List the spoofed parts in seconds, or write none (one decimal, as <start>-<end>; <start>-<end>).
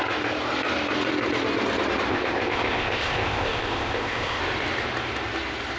2.1-4.4